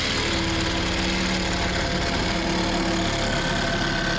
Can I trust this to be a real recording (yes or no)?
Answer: yes